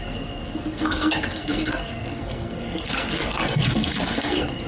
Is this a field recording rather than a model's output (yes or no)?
no